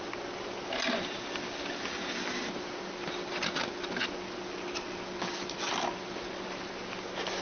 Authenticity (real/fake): real